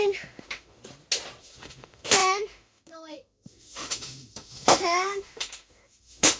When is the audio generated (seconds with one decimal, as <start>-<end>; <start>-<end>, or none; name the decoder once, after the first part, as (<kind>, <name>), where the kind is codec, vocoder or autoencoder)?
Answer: 0.0-0.8 (autoencoder, DAC-VAE); 1.4-6.4